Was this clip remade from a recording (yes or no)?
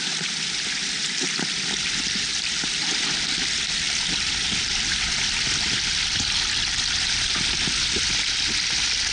no